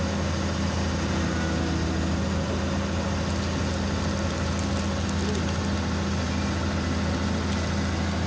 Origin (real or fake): real